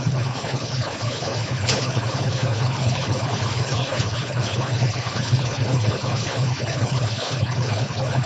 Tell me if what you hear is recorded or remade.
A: remade